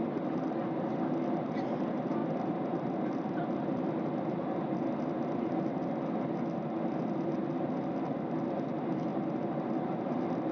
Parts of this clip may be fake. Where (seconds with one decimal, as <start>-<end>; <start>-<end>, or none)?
2.2-4.0